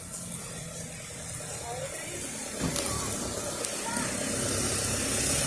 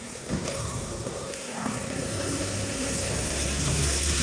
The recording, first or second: first